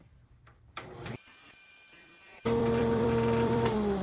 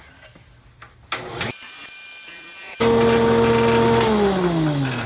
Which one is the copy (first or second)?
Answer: first